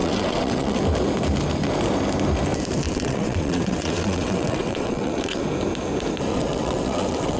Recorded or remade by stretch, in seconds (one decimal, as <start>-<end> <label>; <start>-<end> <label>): 0.0-0.8 remade; 0.8-2.9 recorded; 2.9-5.4 remade; 5.4-6.3 recorded; 6.3-7.4 remade